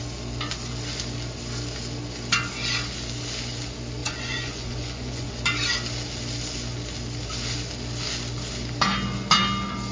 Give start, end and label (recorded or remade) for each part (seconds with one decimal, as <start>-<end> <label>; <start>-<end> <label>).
0.0-4.0 recorded; 4.0-5.3 remade; 5.3-9.9 recorded